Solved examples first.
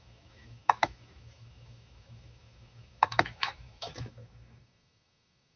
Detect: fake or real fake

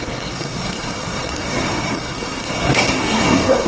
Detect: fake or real fake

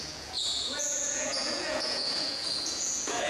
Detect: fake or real fake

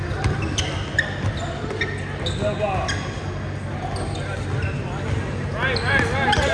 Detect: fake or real real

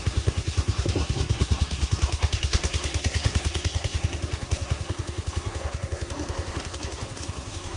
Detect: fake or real fake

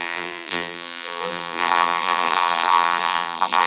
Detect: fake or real fake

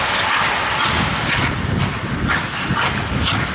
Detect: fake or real real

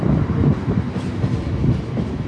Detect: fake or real real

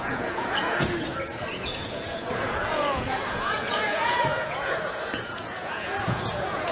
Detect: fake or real fake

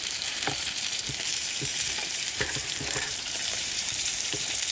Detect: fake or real fake